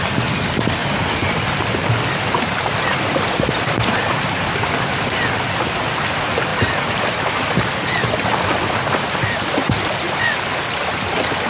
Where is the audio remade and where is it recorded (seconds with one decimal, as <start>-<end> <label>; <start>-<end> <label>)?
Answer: 0.0-0.8 recorded; 0.8-1.3 remade; 1.3-6.5 recorded; 6.5-10.0 remade; 10.0-11.5 recorded